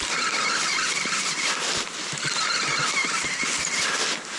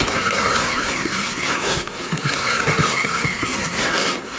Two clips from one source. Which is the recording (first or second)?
first